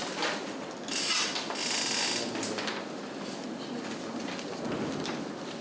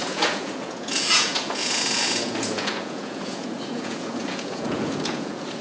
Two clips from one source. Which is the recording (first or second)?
first